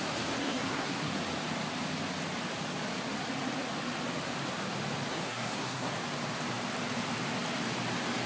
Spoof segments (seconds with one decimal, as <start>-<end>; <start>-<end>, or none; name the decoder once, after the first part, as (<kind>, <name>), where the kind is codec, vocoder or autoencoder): 0.4-1.1 (codec, SNAC); 5.1-5.9